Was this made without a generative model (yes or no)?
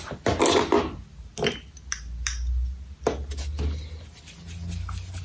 yes